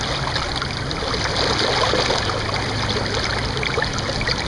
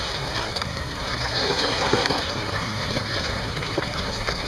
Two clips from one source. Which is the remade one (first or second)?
second